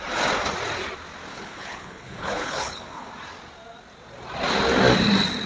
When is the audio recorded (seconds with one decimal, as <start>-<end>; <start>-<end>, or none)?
0.0-1.3; 3.1-5.5